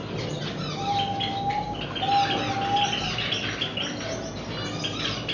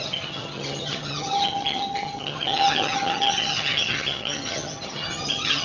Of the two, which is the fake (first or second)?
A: second